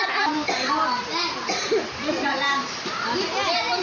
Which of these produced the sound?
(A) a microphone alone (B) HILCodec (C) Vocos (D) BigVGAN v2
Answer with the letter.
A